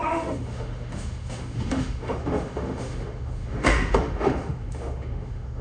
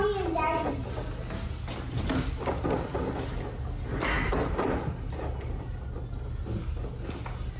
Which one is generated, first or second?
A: first